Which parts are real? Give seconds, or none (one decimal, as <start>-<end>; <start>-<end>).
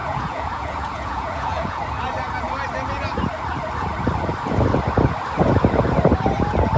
1.8-6.8